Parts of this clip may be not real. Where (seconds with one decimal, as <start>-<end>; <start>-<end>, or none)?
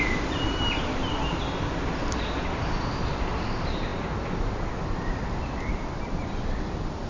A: none